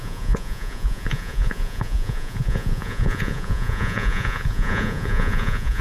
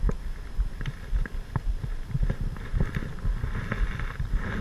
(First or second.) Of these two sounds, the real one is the second